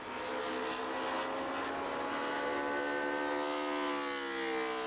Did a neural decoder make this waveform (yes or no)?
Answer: no